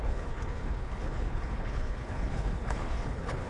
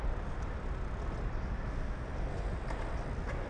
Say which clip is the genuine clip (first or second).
second